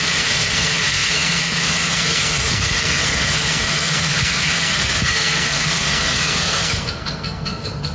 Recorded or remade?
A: remade